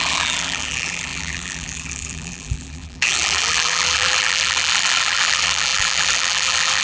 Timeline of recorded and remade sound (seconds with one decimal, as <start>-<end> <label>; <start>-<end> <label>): 0.0-6.8 remade

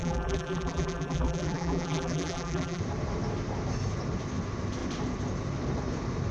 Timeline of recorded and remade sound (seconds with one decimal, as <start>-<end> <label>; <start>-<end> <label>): 0.0-2.8 remade; 2.8-6.3 recorded

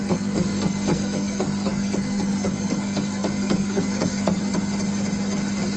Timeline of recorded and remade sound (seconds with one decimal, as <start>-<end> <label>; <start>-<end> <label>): 0.0-4.4 remade; 4.4-5.8 recorded

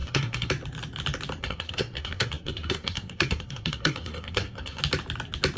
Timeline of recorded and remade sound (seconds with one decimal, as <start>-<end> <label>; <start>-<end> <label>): 0.0-0.5 remade; 0.5-1.4 recorded; 1.4-4.8 remade; 4.8-5.6 recorded